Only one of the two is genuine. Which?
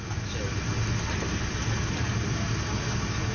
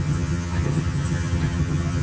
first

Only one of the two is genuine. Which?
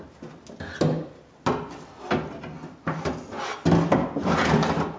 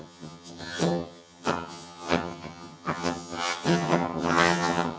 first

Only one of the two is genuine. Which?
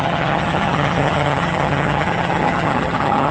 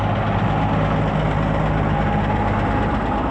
second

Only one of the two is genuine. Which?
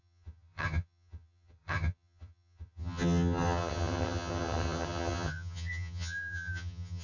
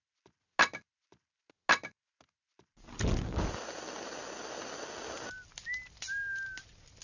second